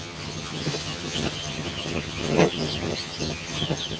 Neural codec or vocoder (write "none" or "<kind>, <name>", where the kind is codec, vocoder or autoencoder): vocoder, HiFi-GAN